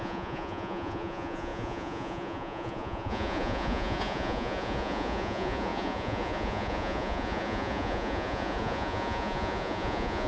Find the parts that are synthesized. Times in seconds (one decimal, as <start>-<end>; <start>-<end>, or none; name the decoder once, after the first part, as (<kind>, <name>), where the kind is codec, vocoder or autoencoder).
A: 0.0-10.3 (vocoder, Vocos)